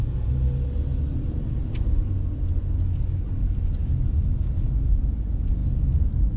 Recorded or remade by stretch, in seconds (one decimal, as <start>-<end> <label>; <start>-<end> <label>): 0.0-6.4 recorded